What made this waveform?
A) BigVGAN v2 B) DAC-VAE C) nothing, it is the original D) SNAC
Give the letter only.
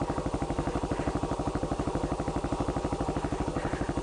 C